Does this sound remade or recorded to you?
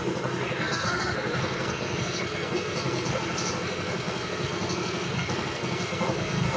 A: remade